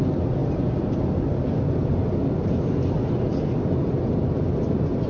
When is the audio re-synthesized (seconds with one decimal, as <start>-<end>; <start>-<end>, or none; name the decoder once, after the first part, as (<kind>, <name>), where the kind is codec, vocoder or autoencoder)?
none